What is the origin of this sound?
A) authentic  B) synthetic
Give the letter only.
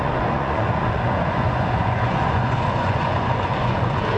B